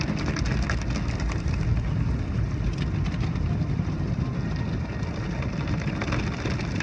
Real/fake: real